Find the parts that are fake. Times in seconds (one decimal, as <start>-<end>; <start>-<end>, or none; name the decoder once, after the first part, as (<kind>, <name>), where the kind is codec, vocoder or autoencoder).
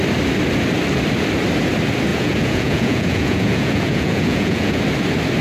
2.1-4.8 (vocoder, Vocos)